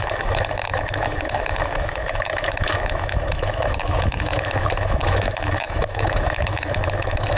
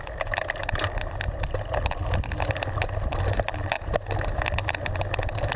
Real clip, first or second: second